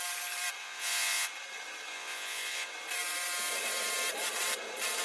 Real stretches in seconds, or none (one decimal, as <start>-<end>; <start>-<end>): 0.0-0.6; 1.3-1.9; 2.7-5.0